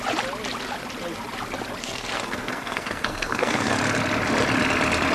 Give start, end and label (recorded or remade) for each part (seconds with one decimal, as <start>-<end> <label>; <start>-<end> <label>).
0.0-1.8 recorded; 1.8-3.8 remade; 3.8-5.1 recorded